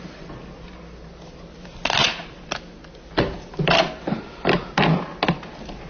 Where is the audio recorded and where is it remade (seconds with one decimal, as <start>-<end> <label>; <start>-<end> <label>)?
0.0-5.9 recorded